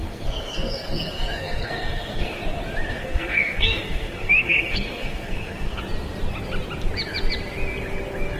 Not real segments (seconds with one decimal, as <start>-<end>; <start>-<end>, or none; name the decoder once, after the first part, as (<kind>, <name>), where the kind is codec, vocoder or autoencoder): 0.0-2.4 (codec, SNAC); 2.9-5.8